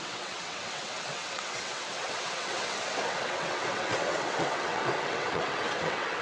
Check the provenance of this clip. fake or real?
fake